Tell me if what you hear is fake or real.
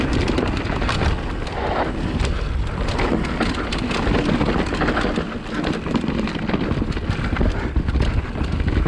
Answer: real